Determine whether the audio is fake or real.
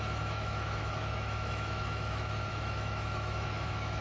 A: fake